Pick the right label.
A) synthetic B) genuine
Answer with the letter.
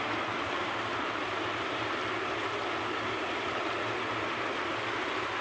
B